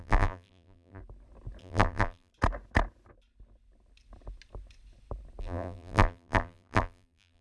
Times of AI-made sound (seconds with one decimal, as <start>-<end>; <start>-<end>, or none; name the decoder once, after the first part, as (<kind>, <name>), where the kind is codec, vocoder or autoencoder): 0.0-1.0 (vocoder, BigVGAN v2); 1.6-2.3; 5.4-7.4

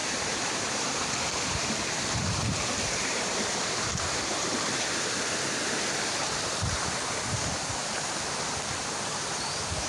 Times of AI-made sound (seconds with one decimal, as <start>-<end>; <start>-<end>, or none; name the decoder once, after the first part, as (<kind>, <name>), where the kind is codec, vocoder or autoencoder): 0.0-7.8 (vocoder, BigVGAN v2); 8.8-9.9